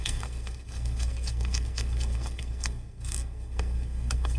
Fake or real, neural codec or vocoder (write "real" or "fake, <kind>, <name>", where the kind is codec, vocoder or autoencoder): fake, codec, SNAC